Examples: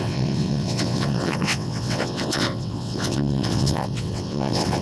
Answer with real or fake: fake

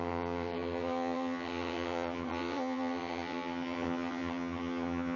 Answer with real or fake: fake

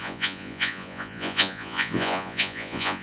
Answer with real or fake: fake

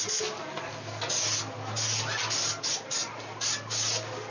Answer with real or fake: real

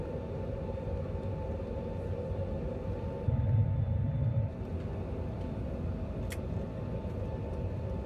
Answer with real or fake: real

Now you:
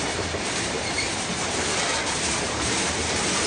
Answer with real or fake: fake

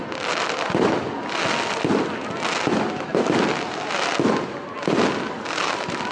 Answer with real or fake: real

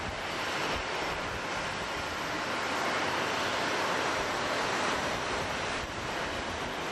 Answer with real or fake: real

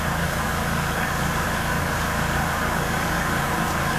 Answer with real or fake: fake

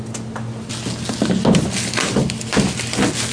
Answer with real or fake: real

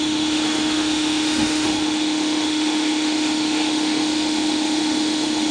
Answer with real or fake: fake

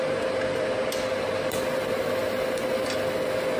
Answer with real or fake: real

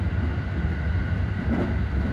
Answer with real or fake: real